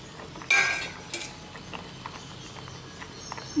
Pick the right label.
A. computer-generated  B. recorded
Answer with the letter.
B